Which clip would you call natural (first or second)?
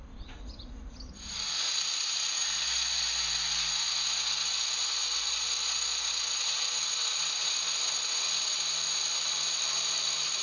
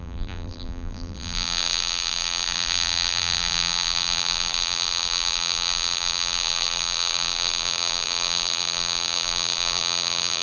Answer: first